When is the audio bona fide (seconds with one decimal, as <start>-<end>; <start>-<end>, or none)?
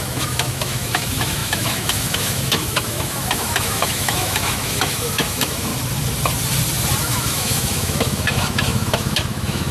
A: 5.7-7.0